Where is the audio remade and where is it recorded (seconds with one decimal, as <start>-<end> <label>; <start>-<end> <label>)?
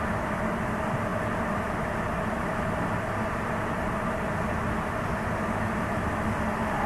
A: 0.0-6.9 recorded